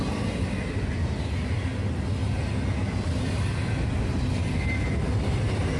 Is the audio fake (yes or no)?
no